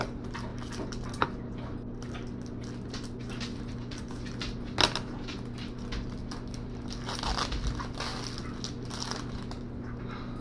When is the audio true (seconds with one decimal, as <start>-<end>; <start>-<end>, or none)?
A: 0.0-10.4